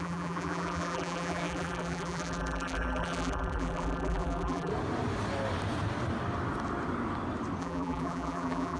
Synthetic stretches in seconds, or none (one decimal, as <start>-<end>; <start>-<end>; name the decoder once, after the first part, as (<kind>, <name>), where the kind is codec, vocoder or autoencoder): 0.0-4.7 (vocoder, BigVGAN v2); 7.6-8.8